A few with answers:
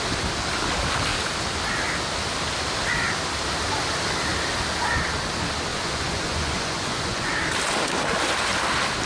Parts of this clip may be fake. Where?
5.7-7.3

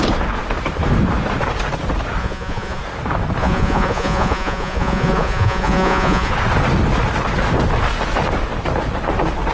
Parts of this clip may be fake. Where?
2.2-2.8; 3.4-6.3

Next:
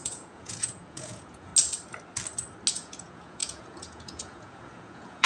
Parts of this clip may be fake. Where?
0.0-1.5; 2.7-5.3

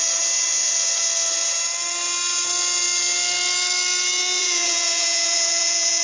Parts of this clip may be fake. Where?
4.4-6.0

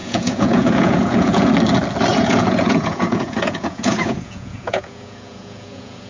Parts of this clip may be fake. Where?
0.0-1.5; 2.1-6.1

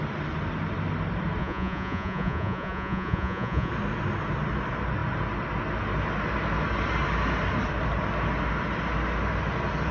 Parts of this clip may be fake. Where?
1.4-3.7

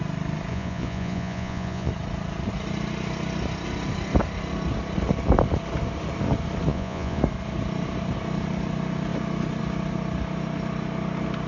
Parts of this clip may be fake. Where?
0.5-1.9; 6.7-7.2